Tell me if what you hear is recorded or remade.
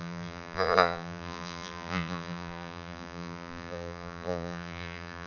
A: remade